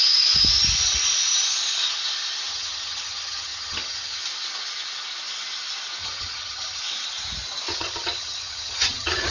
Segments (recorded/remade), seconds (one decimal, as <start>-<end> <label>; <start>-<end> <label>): 0.0-2.5 recorded; 2.5-4.2 remade; 4.2-6.0 recorded; 6.0-6.8 remade; 6.8-7.7 recorded; 7.7-9.3 remade